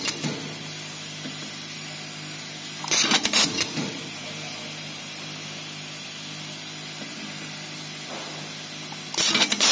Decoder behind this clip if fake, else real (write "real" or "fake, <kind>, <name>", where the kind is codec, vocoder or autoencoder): real